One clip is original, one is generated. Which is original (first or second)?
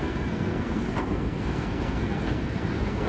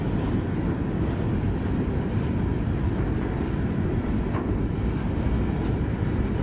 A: second